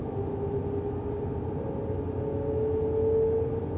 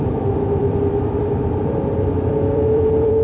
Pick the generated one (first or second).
second